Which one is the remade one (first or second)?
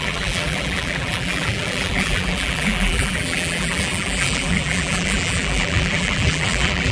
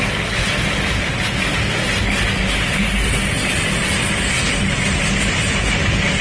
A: first